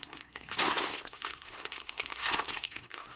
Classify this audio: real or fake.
fake